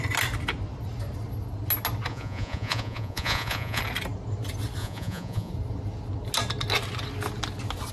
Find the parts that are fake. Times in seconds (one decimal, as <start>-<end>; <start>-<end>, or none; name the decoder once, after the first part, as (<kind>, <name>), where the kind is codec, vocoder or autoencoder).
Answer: 2.1-3.8 (vocoder, Vocos); 4.8-5.5